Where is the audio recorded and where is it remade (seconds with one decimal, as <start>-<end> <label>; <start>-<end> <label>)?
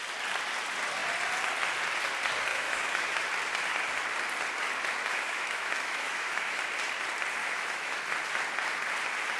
0.0-2.5 recorded; 2.5-3.2 remade; 3.2-5.1 recorded; 5.1-6.6 remade; 6.6-7.4 recorded; 7.4-8.0 remade; 8.0-9.4 recorded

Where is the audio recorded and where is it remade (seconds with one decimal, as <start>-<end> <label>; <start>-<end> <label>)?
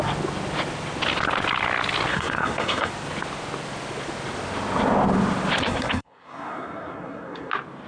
0.0-2.1 recorded; 2.1-2.9 remade; 2.9-5.6 recorded; 5.6-7.5 remade; 7.5-7.9 recorded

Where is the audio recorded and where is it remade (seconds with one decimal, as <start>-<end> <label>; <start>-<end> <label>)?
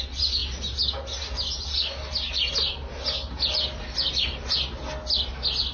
0.0-5.7 recorded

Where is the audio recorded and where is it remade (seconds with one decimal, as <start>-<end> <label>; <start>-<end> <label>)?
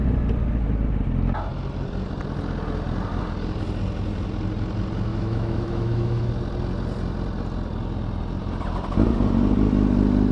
0.0-5.1 recorded; 5.1-6.3 remade; 6.3-10.3 recorded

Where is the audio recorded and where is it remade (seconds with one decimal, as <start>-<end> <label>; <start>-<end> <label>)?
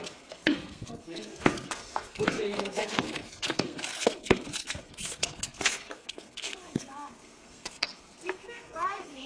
0.0-9.3 remade